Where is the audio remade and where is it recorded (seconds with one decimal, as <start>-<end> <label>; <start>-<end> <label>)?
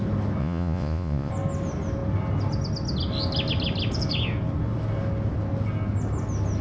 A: 0.0-0.4 recorded; 0.4-1.3 remade; 1.3-6.6 recorded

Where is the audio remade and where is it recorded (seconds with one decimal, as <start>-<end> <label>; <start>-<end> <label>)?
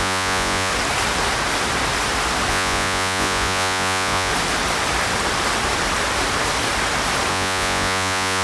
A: 0.0-0.7 remade; 0.7-2.5 recorded; 2.5-4.3 remade; 4.3-7.3 recorded; 7.3-8.4 remade